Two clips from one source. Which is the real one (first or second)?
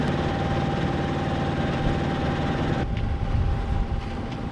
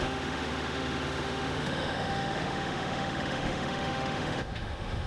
first